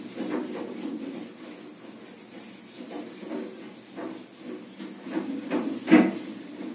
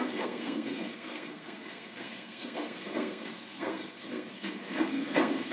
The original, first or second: first